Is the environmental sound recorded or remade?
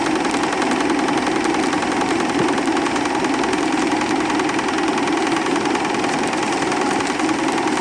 recorded